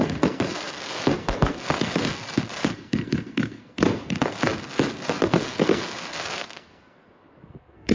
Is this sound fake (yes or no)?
yes